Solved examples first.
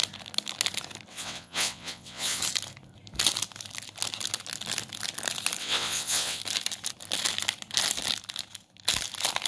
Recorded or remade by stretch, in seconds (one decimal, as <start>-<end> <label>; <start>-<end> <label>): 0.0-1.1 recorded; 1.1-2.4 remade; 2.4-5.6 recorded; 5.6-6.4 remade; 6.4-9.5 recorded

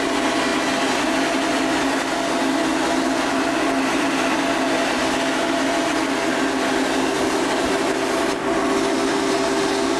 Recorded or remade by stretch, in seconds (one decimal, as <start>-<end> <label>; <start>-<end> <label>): 0.0-10.0 recorded

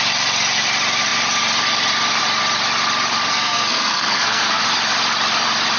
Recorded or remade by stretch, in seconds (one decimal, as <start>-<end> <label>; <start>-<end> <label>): 0.0-3.3 recorded; 3.3-4.6 remade; 4.6-5.8 recorded

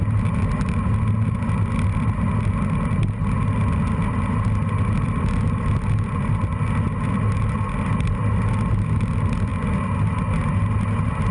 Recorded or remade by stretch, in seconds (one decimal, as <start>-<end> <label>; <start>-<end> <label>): 0.0-11.3 recorded